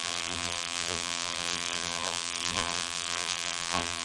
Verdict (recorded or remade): remade